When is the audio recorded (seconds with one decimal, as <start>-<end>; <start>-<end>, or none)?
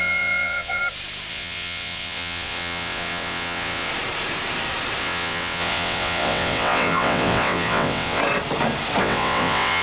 0.8-1.3; 3.9-5.0; 8.2-9.0